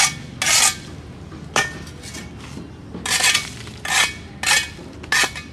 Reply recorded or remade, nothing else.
recorded